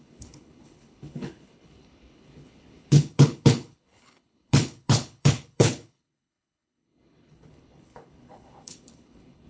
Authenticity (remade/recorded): remade